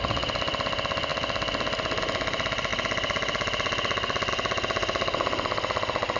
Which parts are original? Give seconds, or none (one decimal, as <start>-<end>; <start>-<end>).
0.0-6.2